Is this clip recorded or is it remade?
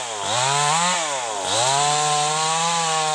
recorded